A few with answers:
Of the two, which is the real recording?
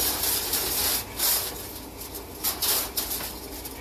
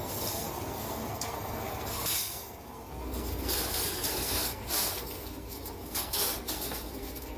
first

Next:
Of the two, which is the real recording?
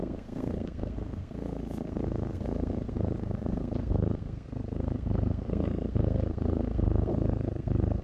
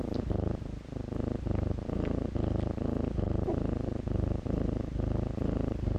second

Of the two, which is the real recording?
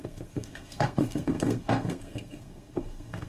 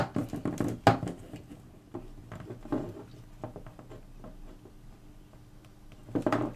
second